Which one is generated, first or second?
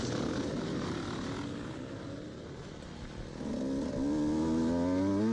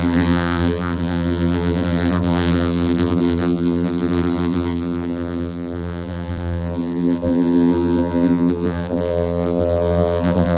second